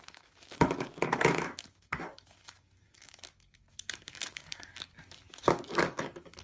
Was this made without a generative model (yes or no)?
no